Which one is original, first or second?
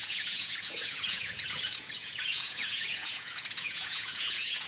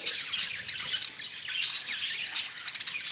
second